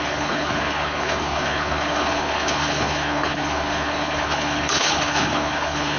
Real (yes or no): no